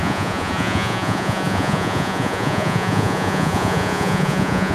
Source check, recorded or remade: remade